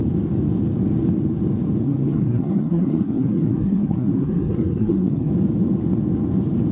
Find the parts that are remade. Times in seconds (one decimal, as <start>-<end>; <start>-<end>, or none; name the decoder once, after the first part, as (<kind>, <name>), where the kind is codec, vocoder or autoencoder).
1.8-5.3 (codec, SNAC)